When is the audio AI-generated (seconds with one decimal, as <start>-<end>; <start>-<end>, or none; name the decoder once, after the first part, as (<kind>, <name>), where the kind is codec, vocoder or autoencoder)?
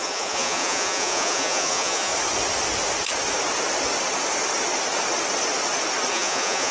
0.0-2.1 (vocoder, Vocos); 6.1-6.7